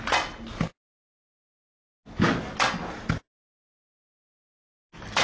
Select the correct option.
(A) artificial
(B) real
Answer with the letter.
B